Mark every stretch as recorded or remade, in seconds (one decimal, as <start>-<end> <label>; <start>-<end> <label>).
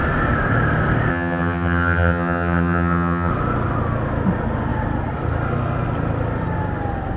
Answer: 0.0-1.1 recorded; 1.1-3.3 remade; 3.3-7.2 recorded